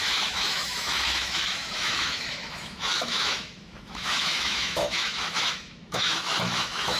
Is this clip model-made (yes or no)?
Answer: yes